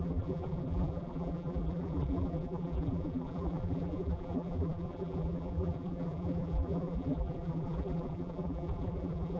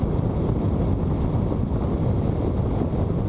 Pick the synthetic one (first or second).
first